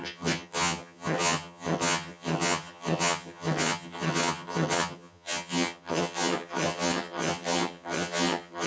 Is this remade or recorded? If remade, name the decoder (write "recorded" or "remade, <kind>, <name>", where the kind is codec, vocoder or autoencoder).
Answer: remade, vocoder, HiFi-GAN